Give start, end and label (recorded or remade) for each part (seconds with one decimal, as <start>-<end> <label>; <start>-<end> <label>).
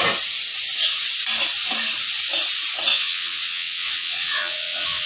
0.0-2.9 recorded; 2.9-5.1 remade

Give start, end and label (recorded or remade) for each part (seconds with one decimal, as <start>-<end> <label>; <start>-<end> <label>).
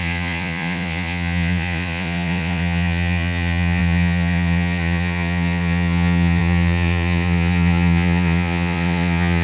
0.0-9.4 remade